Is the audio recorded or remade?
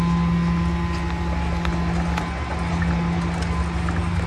recorded